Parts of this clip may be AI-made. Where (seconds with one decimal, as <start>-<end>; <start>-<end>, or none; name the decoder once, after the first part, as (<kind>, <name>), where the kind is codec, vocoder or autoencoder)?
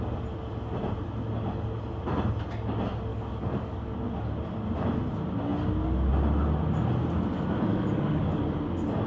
3.1-4.0 (codec, DAC); 7.7-8.4